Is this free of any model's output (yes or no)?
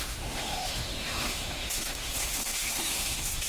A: no